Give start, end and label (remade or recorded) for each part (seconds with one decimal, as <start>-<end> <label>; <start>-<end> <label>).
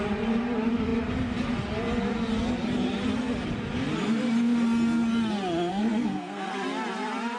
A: 0.0-5.7 recorded; 5.7-6.5 remade; 6.5-7.4 recorded